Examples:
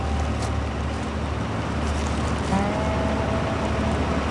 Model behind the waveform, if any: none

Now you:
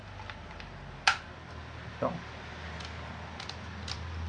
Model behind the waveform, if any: none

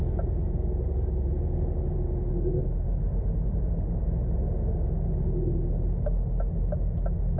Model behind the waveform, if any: none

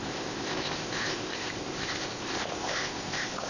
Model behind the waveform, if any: codec, ZipCodec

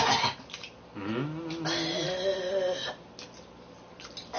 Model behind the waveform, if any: none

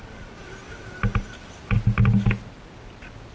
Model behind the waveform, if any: none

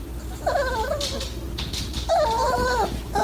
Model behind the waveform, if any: none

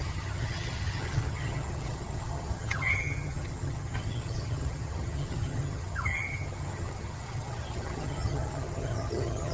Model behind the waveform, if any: vocoder, HiFi-GAN